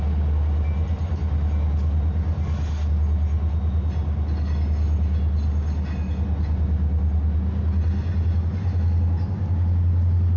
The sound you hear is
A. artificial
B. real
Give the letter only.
B